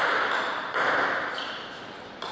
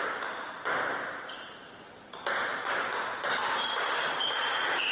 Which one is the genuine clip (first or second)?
first